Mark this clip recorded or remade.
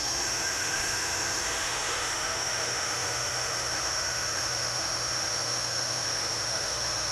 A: remade